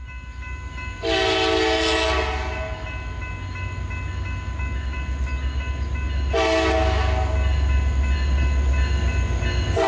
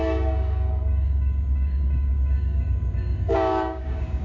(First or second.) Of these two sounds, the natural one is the first